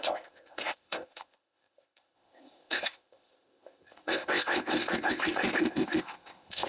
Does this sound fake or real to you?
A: fake